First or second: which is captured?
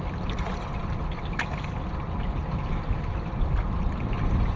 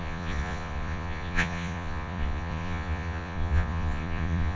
first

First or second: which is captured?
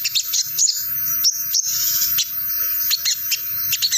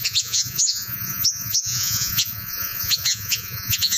first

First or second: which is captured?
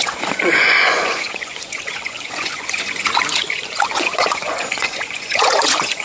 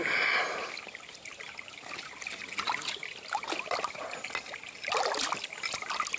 second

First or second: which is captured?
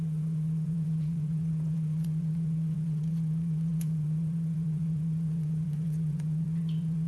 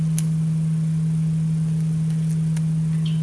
second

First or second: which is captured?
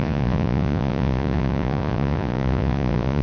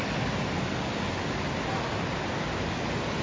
second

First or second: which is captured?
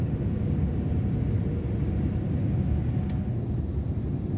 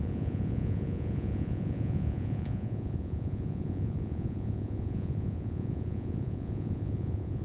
first